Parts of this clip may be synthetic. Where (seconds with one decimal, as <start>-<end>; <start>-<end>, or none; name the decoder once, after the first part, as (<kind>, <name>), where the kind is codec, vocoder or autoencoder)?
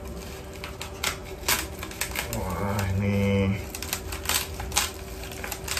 none